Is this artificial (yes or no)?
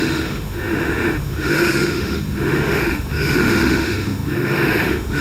yes